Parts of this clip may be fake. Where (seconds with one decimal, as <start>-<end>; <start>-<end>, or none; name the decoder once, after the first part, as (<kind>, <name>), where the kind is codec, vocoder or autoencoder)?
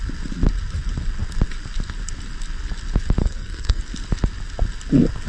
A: 3.2-3.8 (codec, SNAC)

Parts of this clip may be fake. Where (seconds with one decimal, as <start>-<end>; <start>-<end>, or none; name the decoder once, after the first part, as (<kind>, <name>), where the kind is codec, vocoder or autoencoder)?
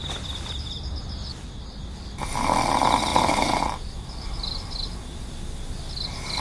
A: none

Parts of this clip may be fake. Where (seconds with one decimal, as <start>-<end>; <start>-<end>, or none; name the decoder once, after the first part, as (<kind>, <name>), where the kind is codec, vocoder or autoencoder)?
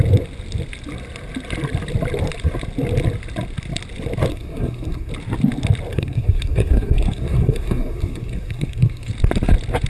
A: 4.3-5.1 (codec, SNAC); 5.9-9.1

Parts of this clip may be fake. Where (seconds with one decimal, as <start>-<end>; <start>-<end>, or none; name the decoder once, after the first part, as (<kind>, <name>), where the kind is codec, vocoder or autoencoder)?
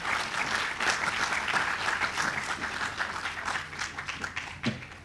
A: none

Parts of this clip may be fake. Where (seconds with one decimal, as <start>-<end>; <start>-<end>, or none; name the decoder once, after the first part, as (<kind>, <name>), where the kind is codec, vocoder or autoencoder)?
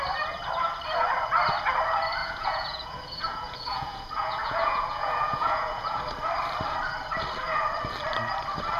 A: 2.2-6.0 (vocoder, Vocos)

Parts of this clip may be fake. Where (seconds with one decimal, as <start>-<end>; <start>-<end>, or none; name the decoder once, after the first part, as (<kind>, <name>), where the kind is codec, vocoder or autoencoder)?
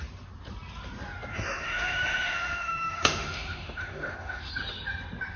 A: 1.3-4.5 (autoencoder, DAC-VAE)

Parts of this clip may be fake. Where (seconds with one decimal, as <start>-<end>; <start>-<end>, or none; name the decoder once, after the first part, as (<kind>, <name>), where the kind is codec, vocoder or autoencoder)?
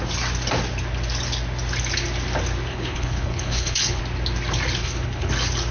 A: 2.7-4.0 (codec, HILCodec); 4.8-5.3